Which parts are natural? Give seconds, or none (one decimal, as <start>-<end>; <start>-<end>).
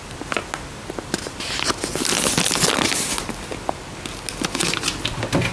0.0-5.5